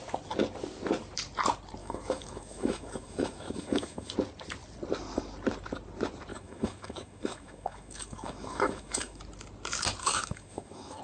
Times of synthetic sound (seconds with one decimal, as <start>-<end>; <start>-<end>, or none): 1.8-4.1; 6.3-9.2; 10.0-11.0

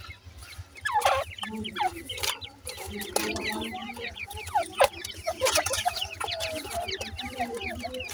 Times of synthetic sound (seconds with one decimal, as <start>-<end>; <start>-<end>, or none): 3.8-6.7

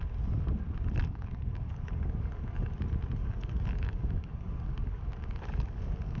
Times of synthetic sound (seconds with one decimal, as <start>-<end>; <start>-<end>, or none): 1.0-2.7; 3.2-6.2

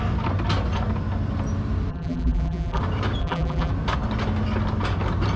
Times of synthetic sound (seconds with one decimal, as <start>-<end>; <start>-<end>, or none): 1.9-2.8; 3.2-3.7

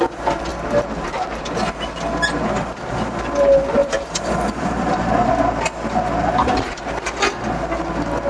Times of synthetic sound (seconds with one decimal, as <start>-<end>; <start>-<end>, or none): 3.8-5.3; 6.2-6.8

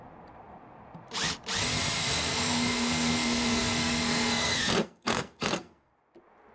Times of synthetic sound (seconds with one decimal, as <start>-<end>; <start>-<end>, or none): 2.0-5.9